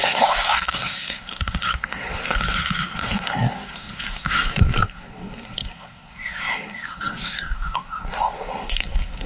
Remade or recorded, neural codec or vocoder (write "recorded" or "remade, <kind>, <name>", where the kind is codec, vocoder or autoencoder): remade, codec, SNAC